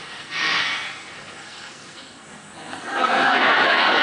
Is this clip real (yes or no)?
no